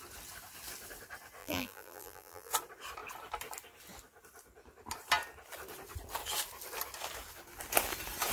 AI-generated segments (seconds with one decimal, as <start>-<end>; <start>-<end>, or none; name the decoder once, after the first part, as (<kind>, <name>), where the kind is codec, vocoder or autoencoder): 1.4-2.5 (vocoder, BigVGAN v2)